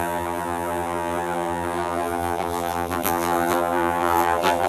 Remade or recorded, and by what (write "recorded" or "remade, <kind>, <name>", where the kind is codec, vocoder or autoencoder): remade, vocoder, BigVGAN v2